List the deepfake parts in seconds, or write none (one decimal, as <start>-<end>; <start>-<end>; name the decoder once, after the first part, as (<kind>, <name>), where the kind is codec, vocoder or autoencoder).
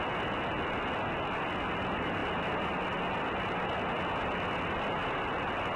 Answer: none